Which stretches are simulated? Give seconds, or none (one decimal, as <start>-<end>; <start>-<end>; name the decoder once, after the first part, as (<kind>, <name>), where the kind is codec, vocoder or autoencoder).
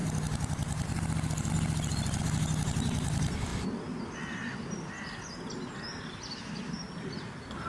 0.0-2.2 (vocoder, BigVGAN v2); 3.5-4.9